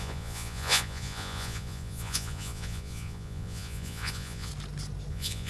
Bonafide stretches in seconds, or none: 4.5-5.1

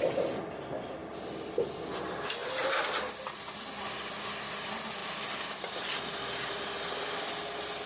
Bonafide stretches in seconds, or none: 0.0-7.9

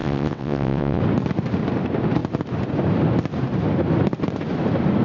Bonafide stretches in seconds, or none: 1.0-5.0